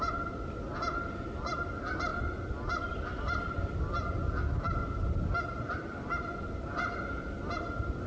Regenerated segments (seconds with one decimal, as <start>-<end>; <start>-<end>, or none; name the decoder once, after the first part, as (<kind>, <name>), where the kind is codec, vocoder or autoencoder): none